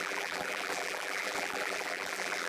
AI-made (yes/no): yes